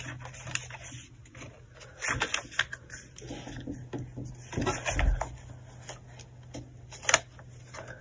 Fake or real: real